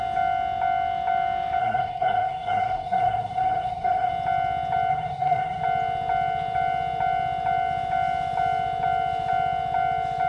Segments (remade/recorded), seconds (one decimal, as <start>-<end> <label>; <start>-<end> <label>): 0.0-1.6 recorded; 1.6-4.1 remade; 4.1-4.9 recorded; 4.9-5.6 remade; 5.6-10.3 recorded